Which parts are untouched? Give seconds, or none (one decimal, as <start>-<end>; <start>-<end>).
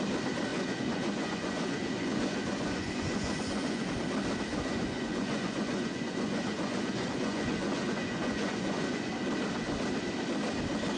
0.0-0.5; 3.9-4.5; 9.1-11.0